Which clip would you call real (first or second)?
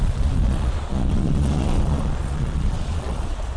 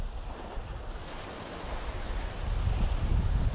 second